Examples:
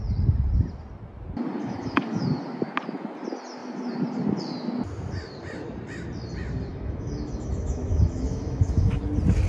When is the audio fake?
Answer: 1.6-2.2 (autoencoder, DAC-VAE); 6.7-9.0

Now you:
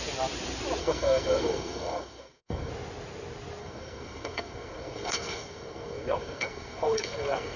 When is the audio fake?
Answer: 0.8-2.7 (codec, SNAC); 3.6-7.6

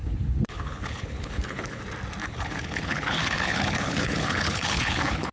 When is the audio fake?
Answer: 0.0-1.8 (codec, HILCodec); 2.2-5.3

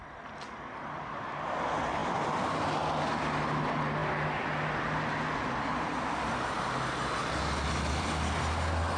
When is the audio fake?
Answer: none